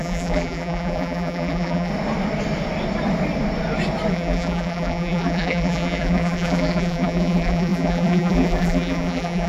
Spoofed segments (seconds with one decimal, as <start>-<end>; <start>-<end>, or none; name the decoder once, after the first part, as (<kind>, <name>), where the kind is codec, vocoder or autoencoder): 0.0-1.9 (vocoder, BigVGAN v2); 4.1-9.5